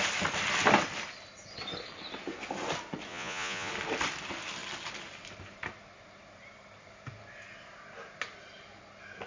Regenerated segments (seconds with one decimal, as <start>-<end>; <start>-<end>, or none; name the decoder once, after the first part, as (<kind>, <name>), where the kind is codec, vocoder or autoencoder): 3.1-3.7 (vocoder, Vocos)